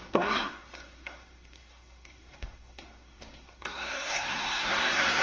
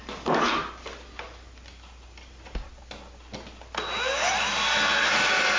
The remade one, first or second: first